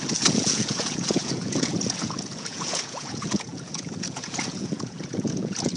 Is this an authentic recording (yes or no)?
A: no